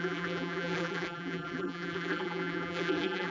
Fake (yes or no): yes